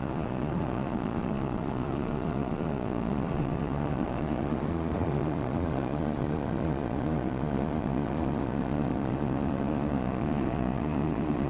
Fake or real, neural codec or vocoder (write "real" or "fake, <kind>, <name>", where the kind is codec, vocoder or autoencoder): fake, vocoder, Vocos